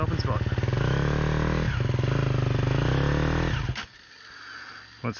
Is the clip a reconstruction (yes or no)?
no